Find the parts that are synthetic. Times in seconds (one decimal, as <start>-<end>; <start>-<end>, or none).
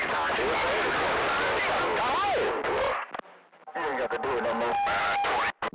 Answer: none